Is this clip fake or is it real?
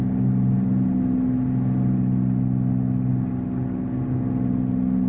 real